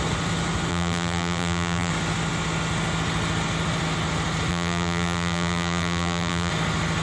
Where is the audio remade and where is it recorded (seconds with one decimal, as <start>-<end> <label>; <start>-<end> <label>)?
0.0-0.7 recorded; 0.7-1.9 remade; 1.9-4.5 recorded; 4.5-6.5 remade; 6.5-7.0 recorded